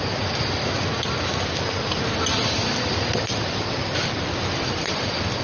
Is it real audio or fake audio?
real